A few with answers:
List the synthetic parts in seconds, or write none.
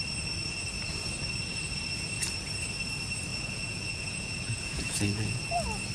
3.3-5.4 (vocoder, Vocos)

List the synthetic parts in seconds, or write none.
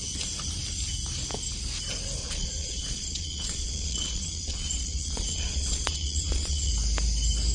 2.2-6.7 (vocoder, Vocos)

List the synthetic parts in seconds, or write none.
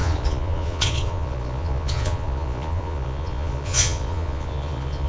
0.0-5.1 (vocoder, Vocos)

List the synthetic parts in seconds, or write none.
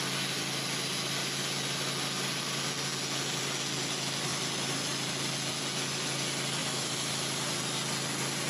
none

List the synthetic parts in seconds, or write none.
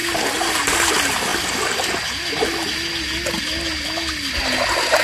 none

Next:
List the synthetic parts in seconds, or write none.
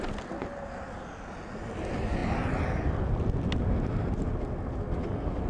none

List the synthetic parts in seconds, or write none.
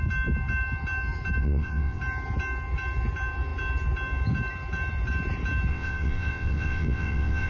1.4-2.0 (vocoder, WaveNeXt); 5.7-7.5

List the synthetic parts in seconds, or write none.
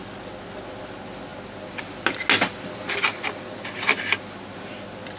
none